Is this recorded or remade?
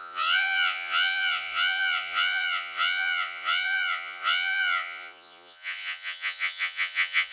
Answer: remade